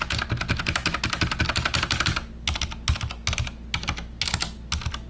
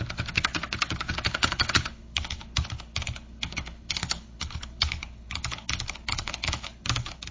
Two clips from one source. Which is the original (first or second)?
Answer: first